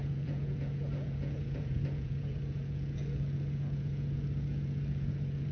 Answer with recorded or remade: remade